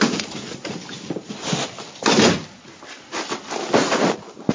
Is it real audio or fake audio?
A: real